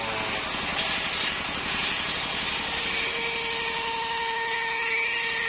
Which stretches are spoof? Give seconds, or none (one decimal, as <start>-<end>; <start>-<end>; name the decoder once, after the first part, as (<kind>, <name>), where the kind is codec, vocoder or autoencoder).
0.7-2.9 (vocoder, BigVGAN v2)